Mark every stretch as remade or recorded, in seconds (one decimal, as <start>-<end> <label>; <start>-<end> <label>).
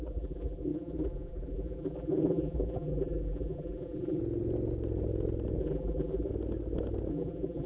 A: 0.0-4.2 remade; 4.2-5.6 recorded; 5.6-6.3 remade; 6.3-7.1 recorded; 7.1-7.7 remade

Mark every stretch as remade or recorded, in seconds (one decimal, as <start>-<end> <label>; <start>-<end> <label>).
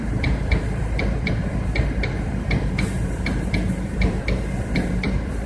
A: 0.0-5.5 remade